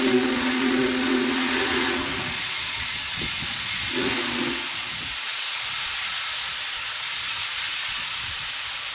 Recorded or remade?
remade